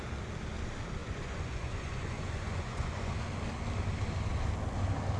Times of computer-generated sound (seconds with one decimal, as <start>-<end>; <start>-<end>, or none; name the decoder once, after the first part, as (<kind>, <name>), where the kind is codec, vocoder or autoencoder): 1.0-3.1 (vocoder, Vocos)